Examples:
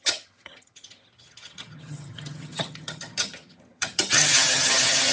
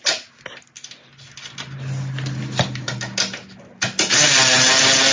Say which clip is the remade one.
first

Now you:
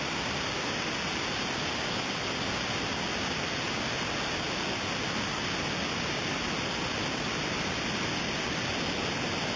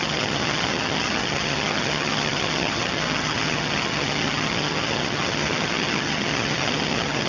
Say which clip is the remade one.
second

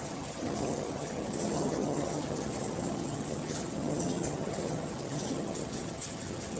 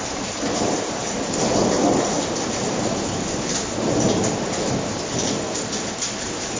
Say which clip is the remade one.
first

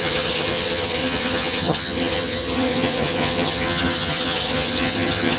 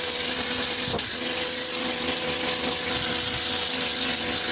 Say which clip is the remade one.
first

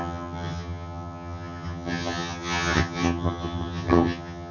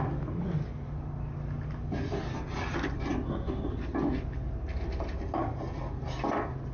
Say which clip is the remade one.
first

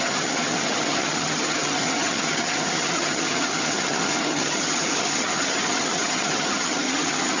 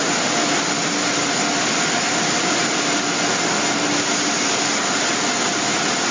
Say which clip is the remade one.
first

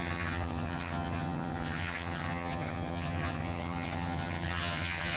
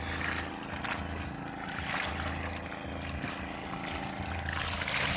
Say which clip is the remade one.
first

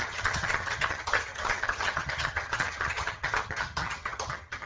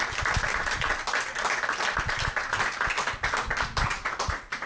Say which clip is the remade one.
first